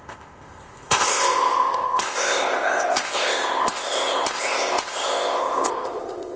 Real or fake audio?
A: fake